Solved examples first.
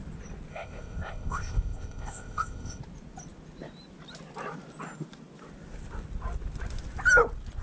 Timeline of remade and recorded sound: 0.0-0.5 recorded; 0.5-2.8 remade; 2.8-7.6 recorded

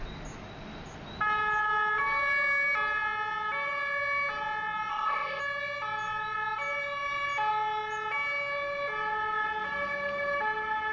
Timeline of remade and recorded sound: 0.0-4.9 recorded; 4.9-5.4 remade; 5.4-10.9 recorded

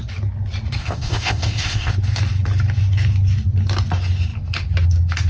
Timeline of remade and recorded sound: 0.0-0.8 recorded; 0.8-1.9 remade; 1.9-5.3 recorded

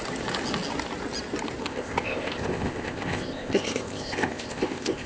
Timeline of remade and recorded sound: 0.0-1.6 recorded; 1.6-5.1 remade

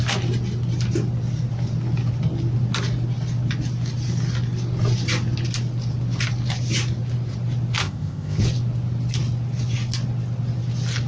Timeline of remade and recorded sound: 0.0-7.8 recorded; 7.8-8.4 remade; 8.4-11.1 recorded